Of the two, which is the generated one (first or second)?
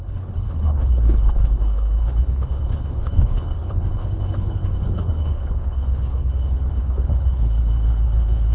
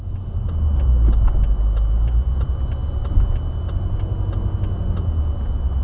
first